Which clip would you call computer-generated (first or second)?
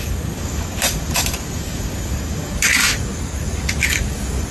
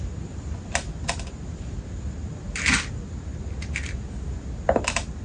first